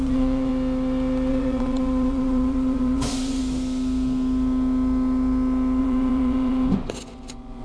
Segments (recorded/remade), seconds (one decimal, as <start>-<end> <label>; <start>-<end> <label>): 0.0-0.5 remade; 0.5-1.3 recorded; 1.3-3.4 remade; 3.4-5.8 recorded; 5.8-7.6 remade